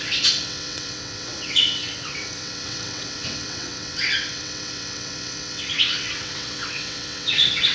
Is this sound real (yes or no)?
no